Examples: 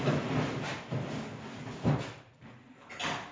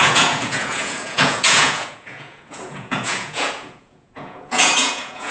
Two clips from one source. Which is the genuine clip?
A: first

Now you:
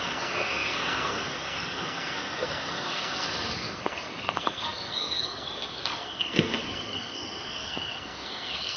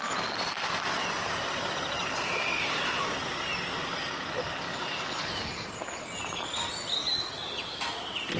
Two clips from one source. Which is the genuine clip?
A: second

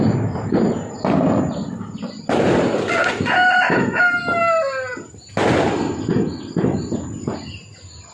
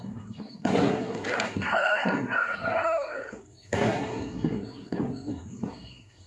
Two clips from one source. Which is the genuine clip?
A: first